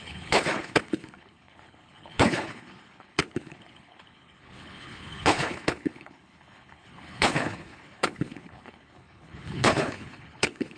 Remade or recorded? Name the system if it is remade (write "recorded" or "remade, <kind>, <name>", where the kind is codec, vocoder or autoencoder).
remade, codec, HILCodec